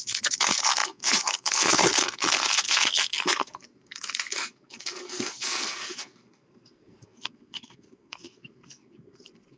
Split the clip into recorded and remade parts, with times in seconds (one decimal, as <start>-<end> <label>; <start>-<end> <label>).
0.0-9.6 remade